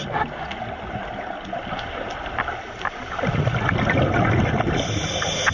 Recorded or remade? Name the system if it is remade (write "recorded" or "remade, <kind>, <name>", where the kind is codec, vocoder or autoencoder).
recorded